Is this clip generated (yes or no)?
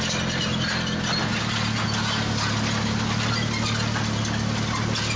no